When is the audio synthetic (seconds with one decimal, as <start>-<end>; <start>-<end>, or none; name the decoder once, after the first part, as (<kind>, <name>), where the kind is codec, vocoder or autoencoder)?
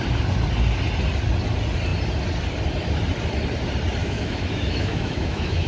4.0-5.7 (autoencoder, DAC-VAE)